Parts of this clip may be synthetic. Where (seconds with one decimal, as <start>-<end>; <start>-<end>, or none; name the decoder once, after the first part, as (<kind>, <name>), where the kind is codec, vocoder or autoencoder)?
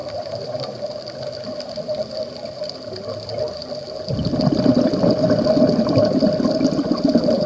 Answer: none